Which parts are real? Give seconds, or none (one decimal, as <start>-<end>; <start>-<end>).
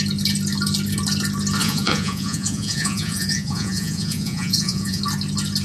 0.0-1.6; 5.0-5.6